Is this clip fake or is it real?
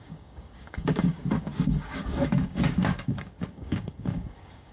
fake